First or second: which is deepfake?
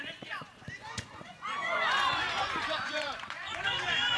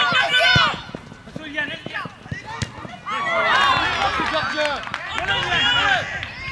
first